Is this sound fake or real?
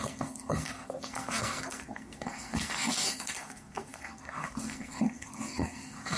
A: fake